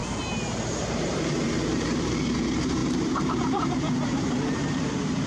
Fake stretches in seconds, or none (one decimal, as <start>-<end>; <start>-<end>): 0.7-5.3